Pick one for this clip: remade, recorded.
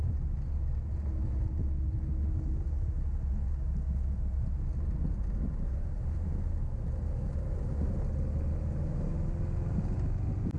recorded